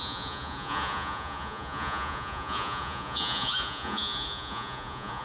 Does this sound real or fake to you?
fake